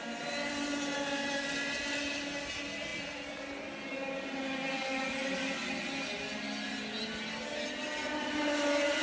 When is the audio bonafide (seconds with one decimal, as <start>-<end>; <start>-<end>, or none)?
0.0-9.0